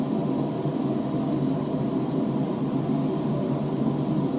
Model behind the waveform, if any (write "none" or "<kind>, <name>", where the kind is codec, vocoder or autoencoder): vocoder, BigVGAN v2